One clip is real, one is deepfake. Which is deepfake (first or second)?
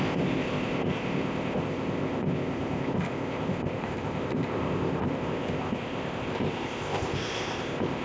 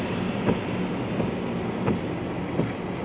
first